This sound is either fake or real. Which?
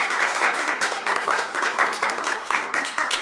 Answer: fake